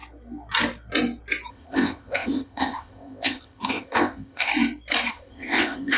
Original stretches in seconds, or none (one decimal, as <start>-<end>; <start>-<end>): 0.0-1.5; 4.5-5.1